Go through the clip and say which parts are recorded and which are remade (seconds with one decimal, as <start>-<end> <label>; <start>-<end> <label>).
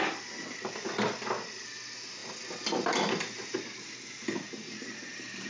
0.0-5.5 recorded